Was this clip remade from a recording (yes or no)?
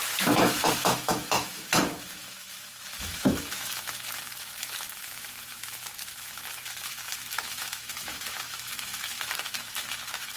yes